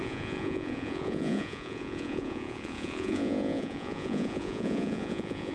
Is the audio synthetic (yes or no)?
yes